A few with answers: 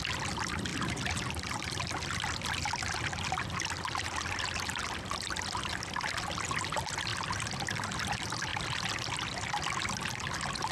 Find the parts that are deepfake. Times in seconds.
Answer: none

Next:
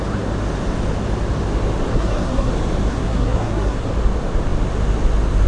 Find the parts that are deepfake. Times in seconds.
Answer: 1.9-2.5; 2.9-3.9

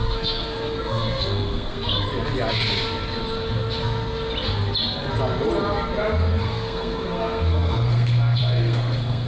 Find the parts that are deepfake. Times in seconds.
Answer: 0.0-2.1; 6.4-9.3

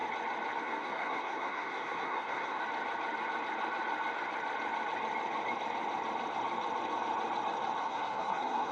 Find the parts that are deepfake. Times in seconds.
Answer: 0.6-2.6; 7.8-8.7

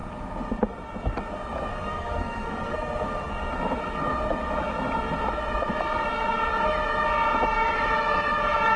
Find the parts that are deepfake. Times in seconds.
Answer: 1.7-3.5

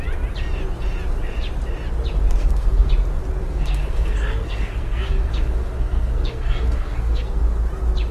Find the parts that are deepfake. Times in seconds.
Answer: 2.4-2.9; 3.4-7.4

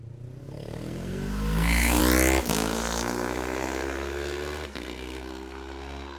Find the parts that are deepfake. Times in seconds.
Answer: 0.4-2.0; 2.4-6.2

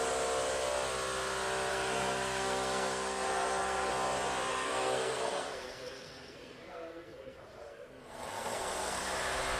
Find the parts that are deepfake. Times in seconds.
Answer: 1.7-3.9; 4.5-9.0